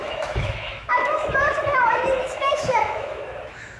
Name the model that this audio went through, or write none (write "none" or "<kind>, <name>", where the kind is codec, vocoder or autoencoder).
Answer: autoencoder, DAC-VAE